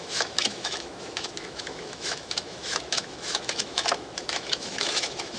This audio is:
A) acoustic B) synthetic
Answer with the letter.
B